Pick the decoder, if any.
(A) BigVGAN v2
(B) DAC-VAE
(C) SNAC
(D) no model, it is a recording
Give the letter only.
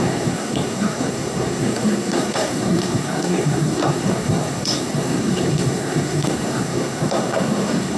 C